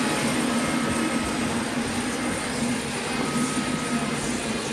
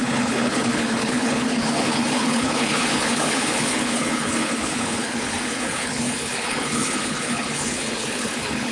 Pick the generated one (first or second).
second